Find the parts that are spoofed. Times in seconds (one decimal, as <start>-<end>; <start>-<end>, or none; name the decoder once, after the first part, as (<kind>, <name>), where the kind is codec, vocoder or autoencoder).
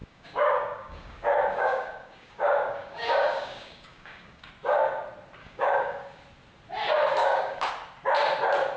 0.0-4.5 (codec, DAC); 5.4-6.2; 7.2-7.7